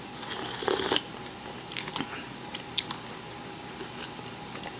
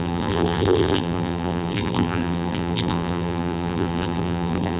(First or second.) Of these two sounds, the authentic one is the first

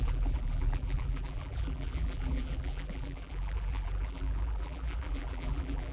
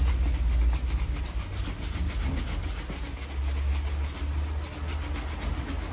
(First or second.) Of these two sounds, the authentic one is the second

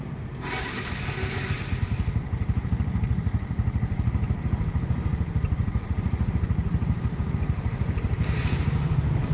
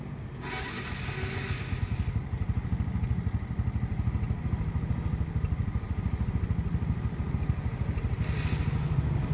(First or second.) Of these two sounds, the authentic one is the second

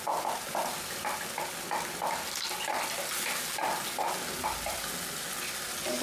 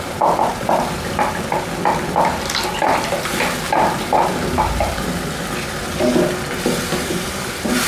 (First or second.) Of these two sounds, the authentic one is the first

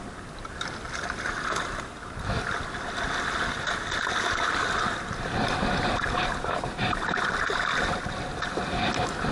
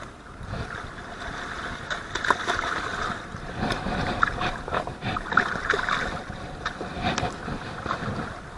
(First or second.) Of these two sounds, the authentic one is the first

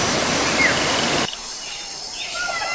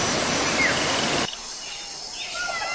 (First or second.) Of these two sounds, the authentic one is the second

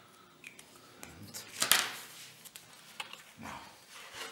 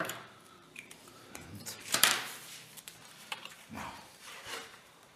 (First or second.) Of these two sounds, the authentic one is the first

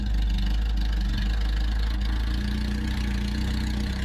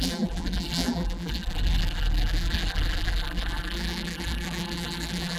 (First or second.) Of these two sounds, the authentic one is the first